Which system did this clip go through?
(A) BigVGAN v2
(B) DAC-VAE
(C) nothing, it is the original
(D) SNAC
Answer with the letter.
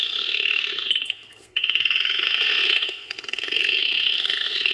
D